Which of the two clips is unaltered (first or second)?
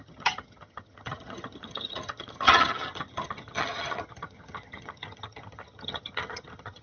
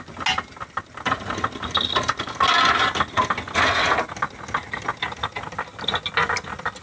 second